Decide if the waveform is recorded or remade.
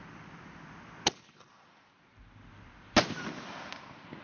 recorded